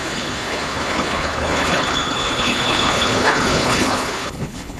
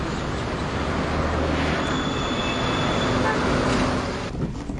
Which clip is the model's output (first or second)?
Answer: first